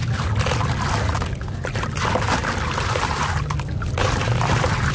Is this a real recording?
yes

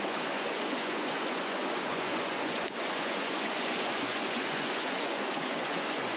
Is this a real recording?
no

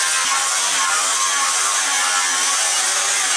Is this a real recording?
yes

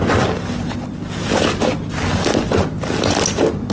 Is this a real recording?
yes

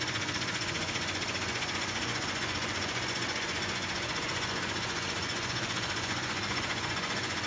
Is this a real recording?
no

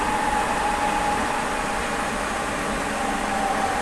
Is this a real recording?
yes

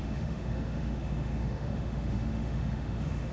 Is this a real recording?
no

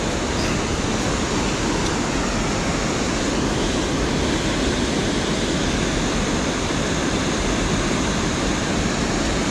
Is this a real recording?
yes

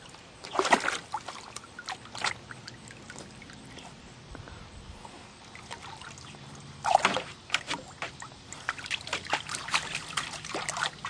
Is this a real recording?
yes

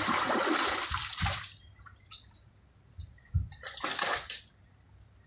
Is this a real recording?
yes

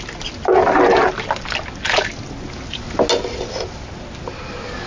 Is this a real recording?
yes